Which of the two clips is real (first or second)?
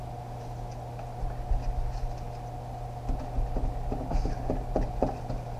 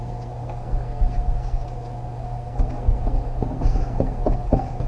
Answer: first